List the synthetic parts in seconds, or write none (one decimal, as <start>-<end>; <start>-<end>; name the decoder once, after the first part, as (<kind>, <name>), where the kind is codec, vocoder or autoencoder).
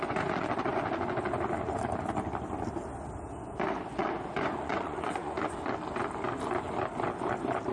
0.0-0.7 (vocoder, Vocos); 3.9-5.4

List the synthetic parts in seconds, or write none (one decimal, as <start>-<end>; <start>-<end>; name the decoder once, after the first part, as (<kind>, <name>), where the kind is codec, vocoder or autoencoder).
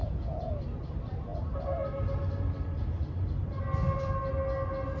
0.0-0.5 (vocoder, Vocos)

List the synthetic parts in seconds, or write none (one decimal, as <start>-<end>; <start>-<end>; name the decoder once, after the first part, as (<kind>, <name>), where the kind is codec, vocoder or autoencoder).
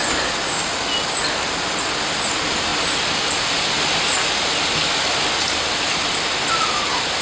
none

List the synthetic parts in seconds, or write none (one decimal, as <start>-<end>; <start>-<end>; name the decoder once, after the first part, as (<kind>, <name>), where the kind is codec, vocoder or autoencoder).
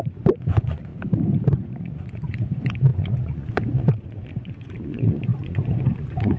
0.0-0.9 (vocoder, Vocos); 1.5-6.4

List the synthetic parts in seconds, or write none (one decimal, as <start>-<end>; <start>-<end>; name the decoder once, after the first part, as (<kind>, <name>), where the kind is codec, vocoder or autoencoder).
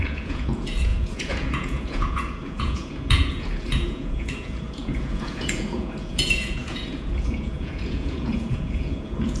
0.0-9.4 (vocoder, Vocos)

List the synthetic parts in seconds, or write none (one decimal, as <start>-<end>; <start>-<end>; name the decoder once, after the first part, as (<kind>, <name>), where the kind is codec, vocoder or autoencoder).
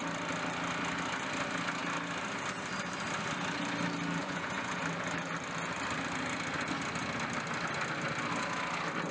4.2-4.8 (vocoder, Vocos)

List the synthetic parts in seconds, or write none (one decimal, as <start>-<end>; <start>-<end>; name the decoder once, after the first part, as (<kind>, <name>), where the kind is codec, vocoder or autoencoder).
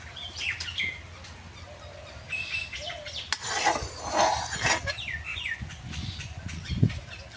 5.3-6.9 (vocoder, Vocos)